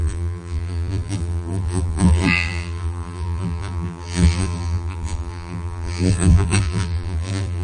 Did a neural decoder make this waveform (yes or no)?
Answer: yes